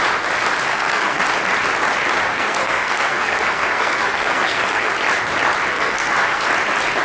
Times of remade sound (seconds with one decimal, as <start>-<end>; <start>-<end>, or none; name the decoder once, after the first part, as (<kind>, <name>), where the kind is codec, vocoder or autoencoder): 0.7-1.2 (codec, SNAC); 2.3-4.9; 5.7-6.5